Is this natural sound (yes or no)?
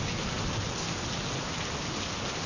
yes